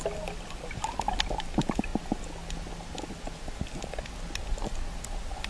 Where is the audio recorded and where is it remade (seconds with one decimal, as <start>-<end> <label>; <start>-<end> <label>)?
0.0-5.5 recorded